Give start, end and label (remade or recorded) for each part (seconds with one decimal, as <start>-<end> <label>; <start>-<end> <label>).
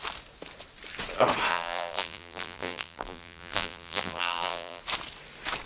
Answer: 0.0-1.5 recorded; 1.5-4.8 remade; 4.8-5.7 recorded